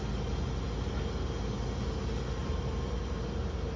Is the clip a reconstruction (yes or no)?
no